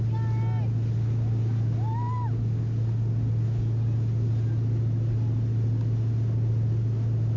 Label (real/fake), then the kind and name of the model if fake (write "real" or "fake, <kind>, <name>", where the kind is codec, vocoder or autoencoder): real